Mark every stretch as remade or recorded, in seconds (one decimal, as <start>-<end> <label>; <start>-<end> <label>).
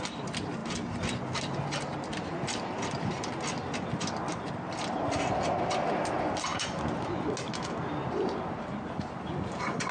0.0-6.5 recorded; 6.5-7.1 remade; 7.1-9.9 recorded